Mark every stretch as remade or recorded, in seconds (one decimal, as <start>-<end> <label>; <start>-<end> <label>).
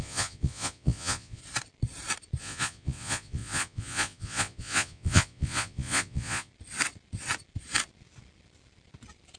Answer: 0.0-1.4 remade; 1.4-2.4 recorded; 2.4-6.5 remade; 6.5-9.4 recorded